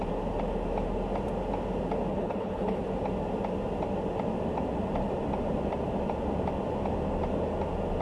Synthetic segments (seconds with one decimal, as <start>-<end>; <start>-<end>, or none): 2.1-2.8